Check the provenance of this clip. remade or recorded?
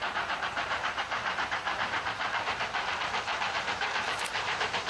remade